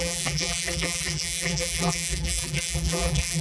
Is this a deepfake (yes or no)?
yes